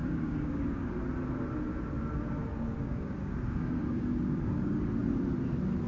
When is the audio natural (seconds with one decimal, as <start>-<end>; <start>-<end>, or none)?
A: 0.9-2.5; 4.8-5.9